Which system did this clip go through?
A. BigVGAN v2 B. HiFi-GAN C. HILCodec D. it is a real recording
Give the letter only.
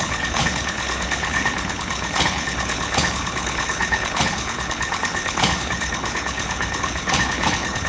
C